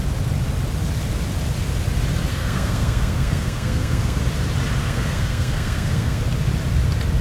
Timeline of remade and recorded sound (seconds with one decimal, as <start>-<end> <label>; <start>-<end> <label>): 0.0-2.3 recorded; 2.3-4.2 remade; 4.2-4.8 recorded; 4.8-6.2 remade; 6.2-7.2 recorded